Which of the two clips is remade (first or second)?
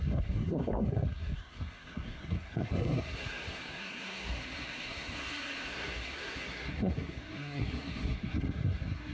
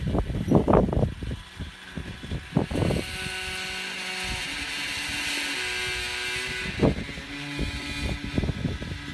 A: first